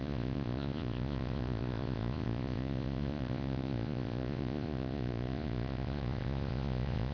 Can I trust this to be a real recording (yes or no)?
no